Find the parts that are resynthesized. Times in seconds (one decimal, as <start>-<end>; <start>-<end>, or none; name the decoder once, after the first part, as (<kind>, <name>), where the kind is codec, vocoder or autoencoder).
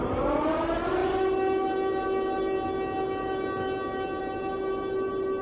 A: none